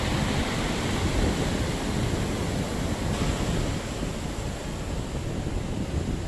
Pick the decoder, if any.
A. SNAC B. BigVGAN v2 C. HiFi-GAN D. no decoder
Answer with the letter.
D